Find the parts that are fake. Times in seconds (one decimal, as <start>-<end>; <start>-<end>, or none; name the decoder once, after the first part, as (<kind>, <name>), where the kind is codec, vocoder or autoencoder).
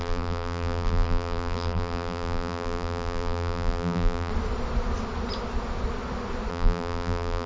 0.0-4.3 (vocoder, BigVGAN v2); 6.5-7.5